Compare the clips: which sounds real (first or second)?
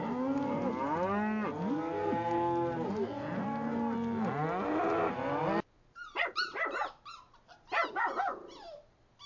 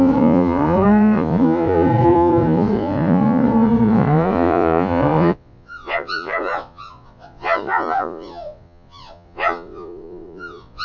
first